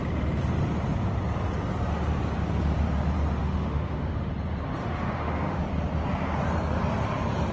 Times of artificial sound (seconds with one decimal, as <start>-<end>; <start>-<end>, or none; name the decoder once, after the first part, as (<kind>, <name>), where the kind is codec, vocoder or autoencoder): 3.4-4.3 (autoencoder, DAC-VAE); 4.8-5.6